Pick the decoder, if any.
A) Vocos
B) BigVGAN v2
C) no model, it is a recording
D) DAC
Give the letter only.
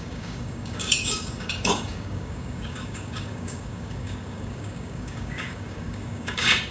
D